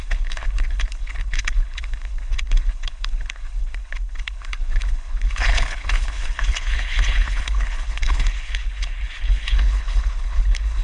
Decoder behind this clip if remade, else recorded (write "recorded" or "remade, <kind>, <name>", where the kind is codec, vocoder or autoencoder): remade, codec, HILCodec